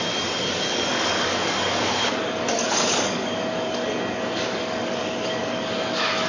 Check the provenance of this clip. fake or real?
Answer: fake